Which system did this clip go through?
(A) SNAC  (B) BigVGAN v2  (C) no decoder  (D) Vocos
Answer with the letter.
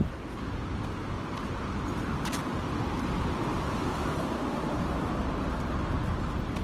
C